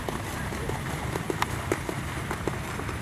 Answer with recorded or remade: recorded